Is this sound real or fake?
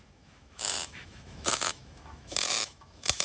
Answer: fake